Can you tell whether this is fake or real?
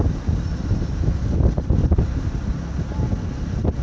real